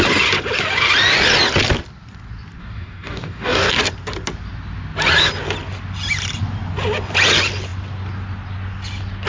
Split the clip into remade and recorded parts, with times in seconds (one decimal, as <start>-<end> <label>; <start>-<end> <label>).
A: 0.0-2.6 recorded; 2.6-3.7 remade; 3.7-9.3 recorded